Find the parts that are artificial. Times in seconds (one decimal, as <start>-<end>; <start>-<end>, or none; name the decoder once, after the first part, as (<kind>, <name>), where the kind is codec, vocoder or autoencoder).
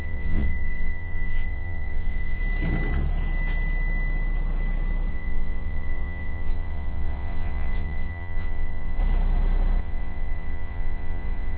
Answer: 0.0-2.4 (vocoder, WaveNeXt); 5.1-9.0; 9.8-11.6